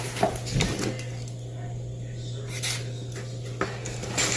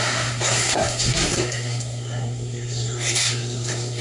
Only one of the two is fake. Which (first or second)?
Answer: second